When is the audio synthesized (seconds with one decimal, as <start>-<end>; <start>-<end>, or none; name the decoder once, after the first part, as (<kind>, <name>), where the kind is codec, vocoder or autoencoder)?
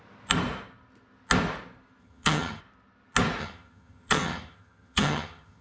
2.0-2.6 (vocoder, HiFi-GAN); 3.4-5.6